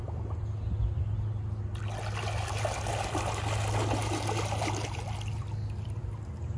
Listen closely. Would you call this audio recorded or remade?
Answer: recorded